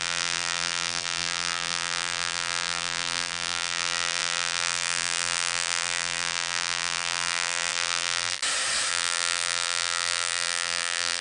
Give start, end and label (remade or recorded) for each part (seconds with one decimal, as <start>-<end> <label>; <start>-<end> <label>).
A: 0.0-8.4 remade; 8.4-8.9 recorded; 8.9-11.2 remade